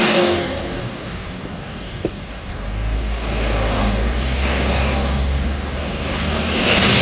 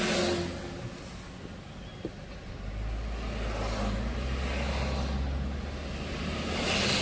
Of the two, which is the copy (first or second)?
first